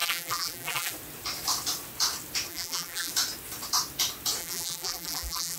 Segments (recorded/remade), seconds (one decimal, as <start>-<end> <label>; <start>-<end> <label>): 0.0-0.9 remade; 0.9-2.5 recorded; 2.5-3.1 remade; 3.1-4.4 recorded; 4.4-5.6 remade